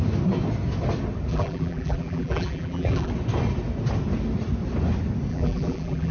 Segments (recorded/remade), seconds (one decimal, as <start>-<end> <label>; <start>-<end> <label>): 0.0-1.3 recorded; 1.3-3.1 remade; 3.1-5.3 recorded; 5.3-6.1 remade